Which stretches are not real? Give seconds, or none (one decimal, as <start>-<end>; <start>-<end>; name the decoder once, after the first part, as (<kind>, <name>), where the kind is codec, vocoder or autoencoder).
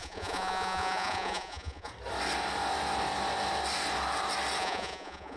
0.0-1.9 (vocoder, Vocos); 4.6-5.4